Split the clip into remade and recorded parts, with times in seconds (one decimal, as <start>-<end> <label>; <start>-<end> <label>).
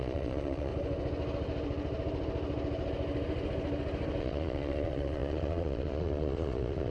0.0-0.7 remade; 0.7-4.2 recorded; 4.2-6.9 remade